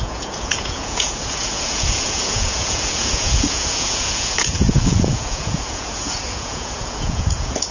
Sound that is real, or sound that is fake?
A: fake